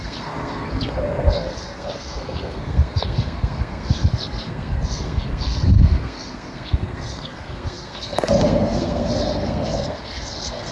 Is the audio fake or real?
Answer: fake